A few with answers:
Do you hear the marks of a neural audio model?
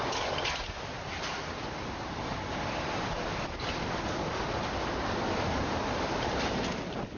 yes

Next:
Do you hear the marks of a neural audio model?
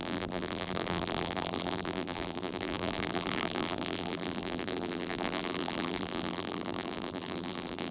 yes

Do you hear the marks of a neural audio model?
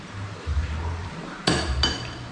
yes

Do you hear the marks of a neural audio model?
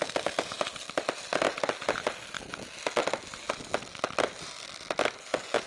no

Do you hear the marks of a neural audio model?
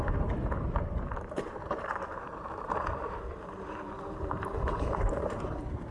yes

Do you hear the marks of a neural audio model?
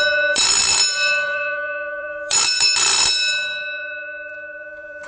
yes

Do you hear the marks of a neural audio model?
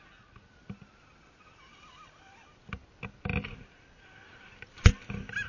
no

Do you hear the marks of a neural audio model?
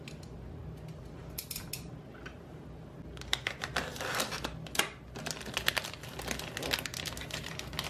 no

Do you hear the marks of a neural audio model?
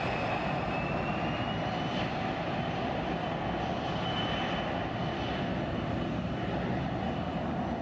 no